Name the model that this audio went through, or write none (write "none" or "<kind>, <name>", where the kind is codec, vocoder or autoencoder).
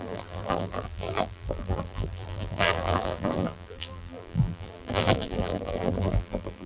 vocoder, BigVGAN v2